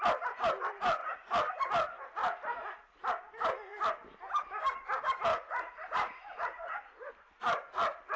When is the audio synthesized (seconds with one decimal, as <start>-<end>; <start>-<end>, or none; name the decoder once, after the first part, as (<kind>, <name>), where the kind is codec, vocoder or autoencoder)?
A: 5.3-7.1 (vocoder, Vocos)